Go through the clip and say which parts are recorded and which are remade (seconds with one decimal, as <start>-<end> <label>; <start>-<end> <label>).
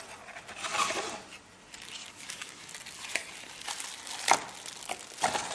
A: 0.0-2.0 recorded; 2.0-2.7 remade; 2.7-5.5 recorded